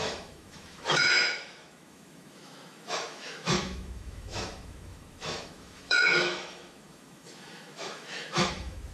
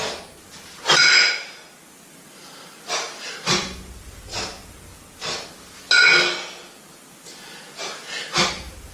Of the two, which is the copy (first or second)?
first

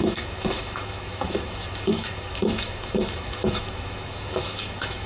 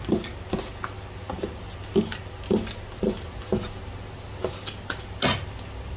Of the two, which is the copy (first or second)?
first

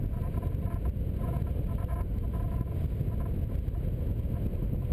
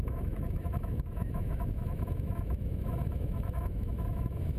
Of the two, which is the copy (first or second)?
second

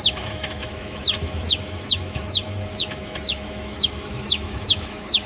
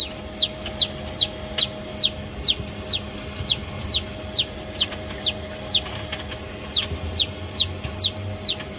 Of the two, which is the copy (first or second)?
first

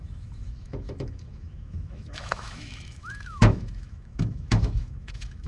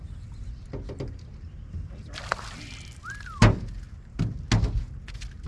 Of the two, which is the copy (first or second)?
first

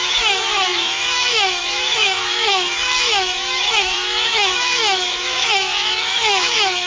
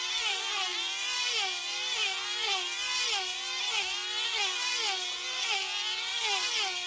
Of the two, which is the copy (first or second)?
first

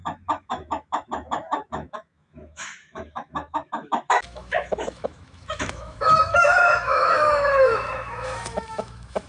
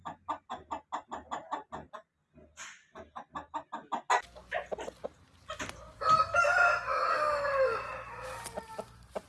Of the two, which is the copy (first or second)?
first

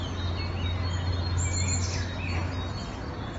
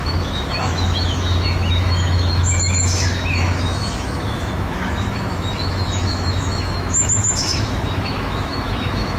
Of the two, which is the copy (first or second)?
second